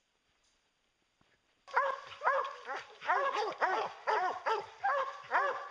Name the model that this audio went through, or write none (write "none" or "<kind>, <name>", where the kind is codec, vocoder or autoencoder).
none